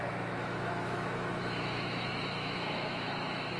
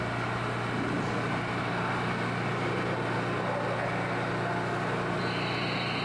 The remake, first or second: first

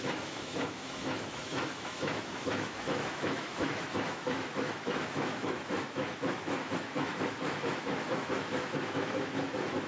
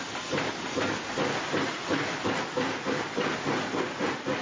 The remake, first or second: first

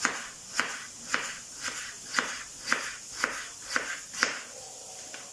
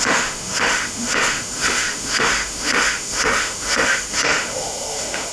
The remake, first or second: second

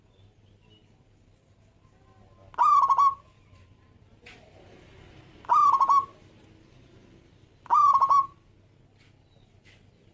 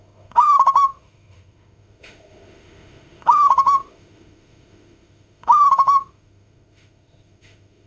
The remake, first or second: second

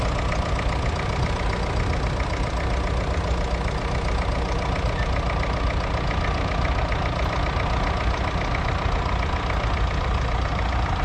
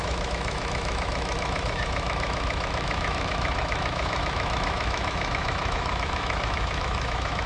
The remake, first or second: second